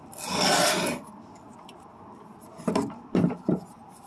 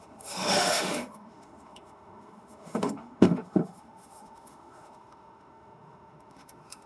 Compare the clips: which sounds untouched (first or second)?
first